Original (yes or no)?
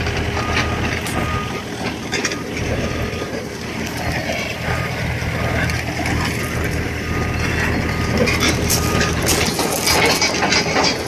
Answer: yes